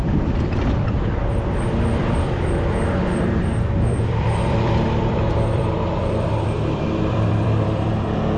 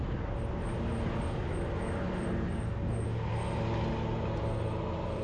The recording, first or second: second